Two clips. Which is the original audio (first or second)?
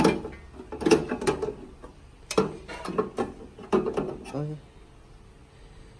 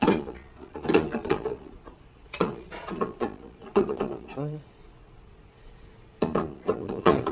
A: first